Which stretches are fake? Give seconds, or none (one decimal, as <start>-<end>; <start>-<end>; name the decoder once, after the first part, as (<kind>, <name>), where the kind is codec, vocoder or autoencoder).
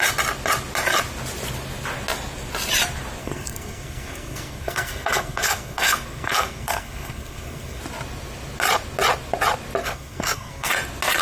3.2-7.8 (codec, SNAC); 9.8-10.7